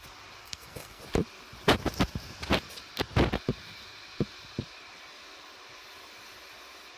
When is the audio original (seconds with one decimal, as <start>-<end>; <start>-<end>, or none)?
0.0-0.4; 1.0-7.0